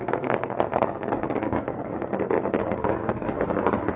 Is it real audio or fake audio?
fake